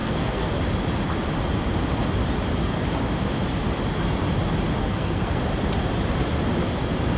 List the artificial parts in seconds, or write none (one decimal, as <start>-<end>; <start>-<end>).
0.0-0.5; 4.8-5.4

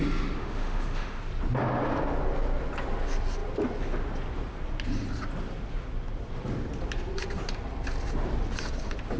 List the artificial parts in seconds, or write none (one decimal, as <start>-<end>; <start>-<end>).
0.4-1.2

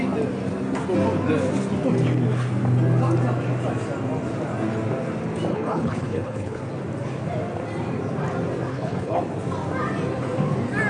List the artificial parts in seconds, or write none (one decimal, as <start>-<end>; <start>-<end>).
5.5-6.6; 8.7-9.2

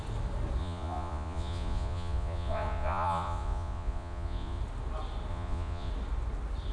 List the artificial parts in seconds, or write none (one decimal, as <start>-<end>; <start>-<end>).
0.6-4.6; 5.3-5.9